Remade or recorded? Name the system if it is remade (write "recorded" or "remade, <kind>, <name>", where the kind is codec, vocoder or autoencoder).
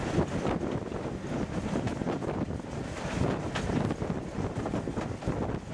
recorded